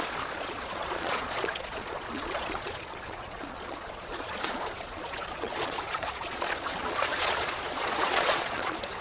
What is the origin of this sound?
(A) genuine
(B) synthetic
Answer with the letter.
B